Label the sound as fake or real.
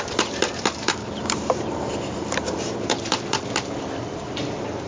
fake